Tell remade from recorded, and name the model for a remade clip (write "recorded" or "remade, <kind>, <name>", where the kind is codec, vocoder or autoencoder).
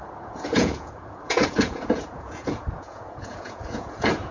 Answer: remade, vocoder, Vocos